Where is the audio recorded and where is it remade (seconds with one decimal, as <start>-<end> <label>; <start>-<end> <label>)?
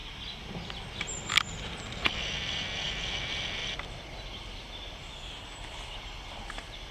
0.0-6.9 recorded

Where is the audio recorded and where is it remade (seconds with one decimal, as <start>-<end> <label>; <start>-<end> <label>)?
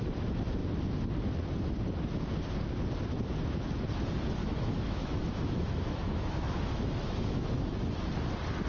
0.0-4.4 recorded; 4.4-7.8 remade; 7.8-8.7 recorded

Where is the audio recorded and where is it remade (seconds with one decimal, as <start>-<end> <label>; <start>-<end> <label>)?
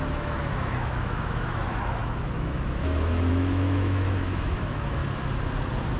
0.0-5.0 remade; 5.0-6.0 recorded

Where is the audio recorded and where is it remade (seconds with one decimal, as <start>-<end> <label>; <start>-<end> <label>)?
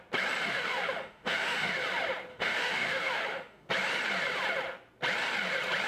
0.0-0.4 recorded; 0.4-1.7 remade; 1.7-2.3 recorded; 2.3-3.7 remade; 3.7-5.9 recorded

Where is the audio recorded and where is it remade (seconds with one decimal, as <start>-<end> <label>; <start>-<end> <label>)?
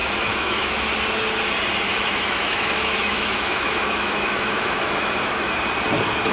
0.0-0.9 remade; 0.9-1.9 recorded; 1.9-5.5 remade; 5.5-6.3 recorded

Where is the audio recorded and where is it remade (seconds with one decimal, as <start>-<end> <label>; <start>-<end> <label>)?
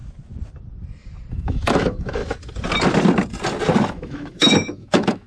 0.0-1.3 recorded; 1.3-2.2 remade; 2.2-3.9 recorded; 3.9-5.3 remade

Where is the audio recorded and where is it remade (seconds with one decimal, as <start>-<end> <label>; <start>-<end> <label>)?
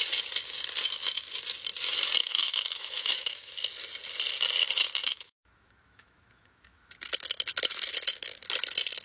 0.0-2.2 recorded; 2.2-3.5 remade; 3.5-5.0 recorded; 5.0-6.9 remade; 6.9-9.0 recorded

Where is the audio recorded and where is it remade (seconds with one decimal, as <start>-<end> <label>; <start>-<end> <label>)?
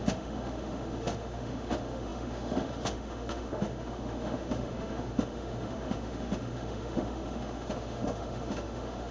0.0-9.1 remade